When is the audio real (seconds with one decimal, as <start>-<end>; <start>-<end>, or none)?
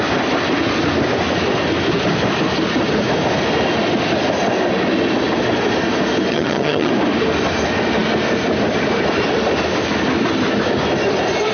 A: 0.0-6.3; 6.9-11.5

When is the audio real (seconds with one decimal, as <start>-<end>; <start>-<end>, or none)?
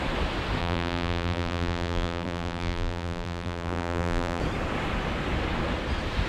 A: 0.0-0.6; 4.4-6.3